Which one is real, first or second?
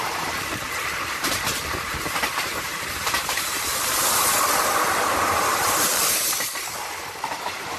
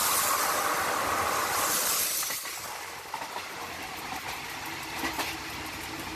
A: second